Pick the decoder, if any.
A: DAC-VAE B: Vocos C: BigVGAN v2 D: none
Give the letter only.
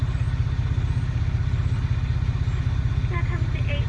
D